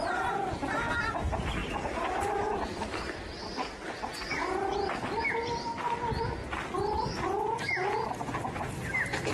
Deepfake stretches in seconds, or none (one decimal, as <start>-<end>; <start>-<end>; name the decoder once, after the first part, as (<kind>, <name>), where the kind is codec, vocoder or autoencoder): none